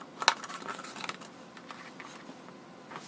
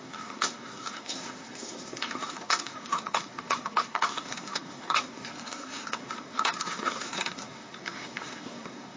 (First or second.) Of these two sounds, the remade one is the second